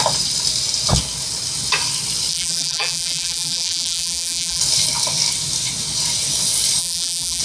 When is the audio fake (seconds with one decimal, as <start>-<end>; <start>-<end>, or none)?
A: 2.3-4.6; 6.8-7.4